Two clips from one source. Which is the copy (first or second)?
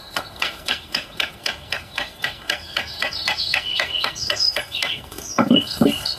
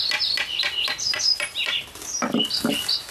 first